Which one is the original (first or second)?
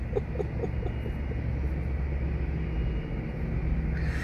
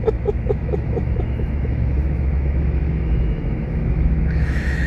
first